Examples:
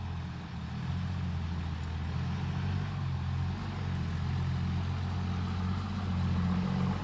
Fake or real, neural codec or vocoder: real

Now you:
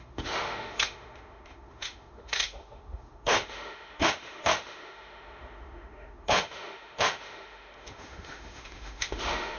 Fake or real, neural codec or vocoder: fake, autoencoder, DAC-VAE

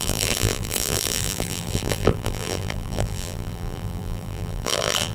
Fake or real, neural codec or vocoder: fake, vocoder, BigVGAN v2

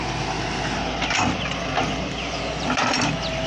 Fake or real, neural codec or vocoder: real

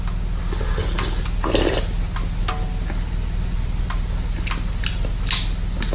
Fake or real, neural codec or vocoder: real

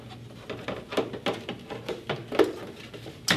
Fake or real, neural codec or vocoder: real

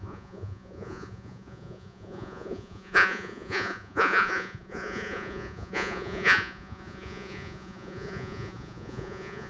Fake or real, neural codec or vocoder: fake, vocoder, Vocos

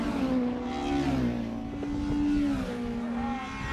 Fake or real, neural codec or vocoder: real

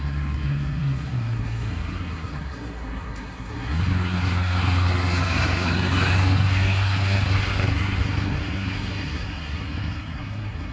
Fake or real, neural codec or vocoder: fake, codec, SNAC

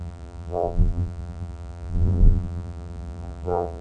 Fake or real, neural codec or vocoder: fake, vocoder, BigVGAN v2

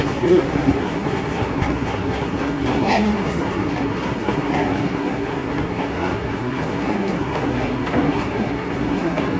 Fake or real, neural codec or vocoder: fake, codec, SNAC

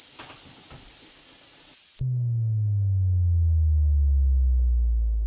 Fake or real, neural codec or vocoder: real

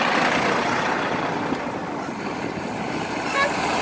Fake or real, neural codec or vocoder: real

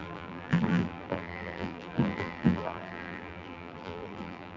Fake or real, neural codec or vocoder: fake, vocoder, BigVGAN v2